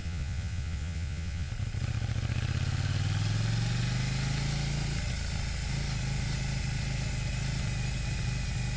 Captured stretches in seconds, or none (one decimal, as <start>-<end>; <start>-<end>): 1.5-8.8